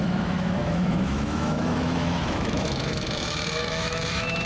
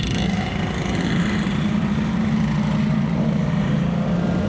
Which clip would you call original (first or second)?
second